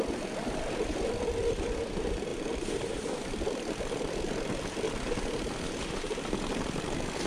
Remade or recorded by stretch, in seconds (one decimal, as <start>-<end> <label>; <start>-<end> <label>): 0.0-7.3 recorded